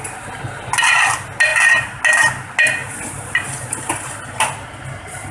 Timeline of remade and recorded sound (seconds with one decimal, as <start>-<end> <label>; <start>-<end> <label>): 0.0-5.3 recorded